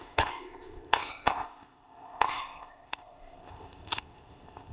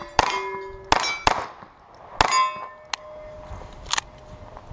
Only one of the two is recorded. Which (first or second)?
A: second